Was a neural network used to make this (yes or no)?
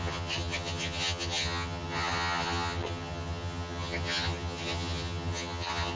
yes